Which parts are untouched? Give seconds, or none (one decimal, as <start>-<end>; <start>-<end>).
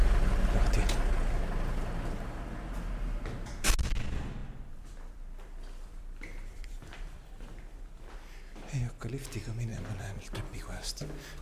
0.0-4.4; 8.1-9.7; 10.2-11.4